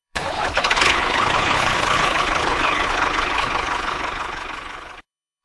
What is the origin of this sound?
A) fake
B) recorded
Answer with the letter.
A